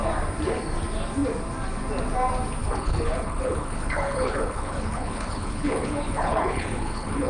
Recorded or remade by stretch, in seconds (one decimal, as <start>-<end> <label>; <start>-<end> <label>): 0.0-2.6 recorded; 2.6-7.3 remade